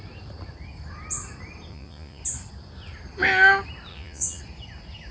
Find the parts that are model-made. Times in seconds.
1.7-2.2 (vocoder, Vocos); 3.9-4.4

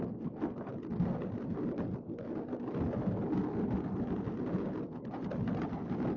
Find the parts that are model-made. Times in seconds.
none

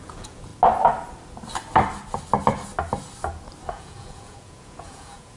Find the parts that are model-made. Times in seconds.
0.0-0.5 (vocoder, Vocos); 3.7-5.4

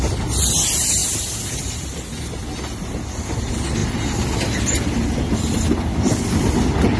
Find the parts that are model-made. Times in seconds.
none

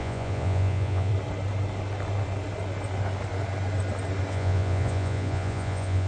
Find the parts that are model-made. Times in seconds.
0.0-1.1 (vocoder, Vocos); 4.3-6.1

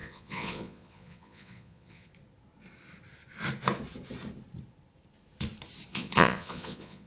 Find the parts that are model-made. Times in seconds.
0.0-2.1 (vocoder, Vocos); 5.9-7.1